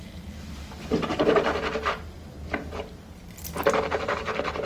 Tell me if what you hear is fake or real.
real